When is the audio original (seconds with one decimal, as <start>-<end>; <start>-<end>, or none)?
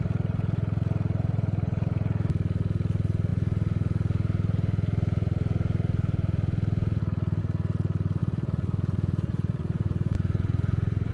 0.0-8.2